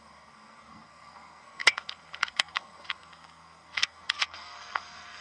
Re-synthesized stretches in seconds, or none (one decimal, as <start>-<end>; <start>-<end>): 0.0-5.2